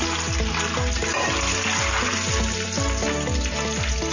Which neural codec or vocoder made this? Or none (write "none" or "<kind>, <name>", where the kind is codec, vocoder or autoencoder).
none